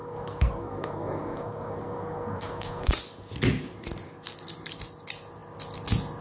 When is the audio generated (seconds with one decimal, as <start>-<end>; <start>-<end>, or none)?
0.0-2.9